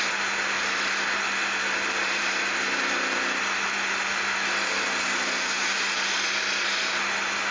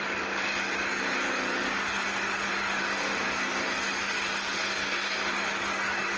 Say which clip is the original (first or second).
first